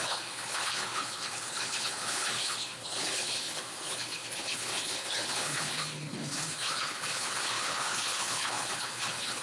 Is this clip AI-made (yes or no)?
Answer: yes